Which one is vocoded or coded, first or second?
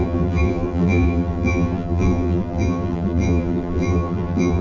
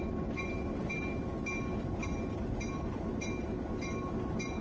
first